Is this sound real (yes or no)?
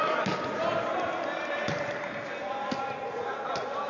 yes